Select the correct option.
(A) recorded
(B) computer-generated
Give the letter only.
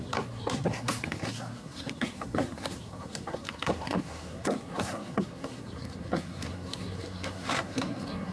B